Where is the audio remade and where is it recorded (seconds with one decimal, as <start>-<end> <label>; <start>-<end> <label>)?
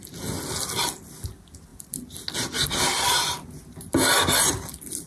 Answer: 0.0-5.1 recorded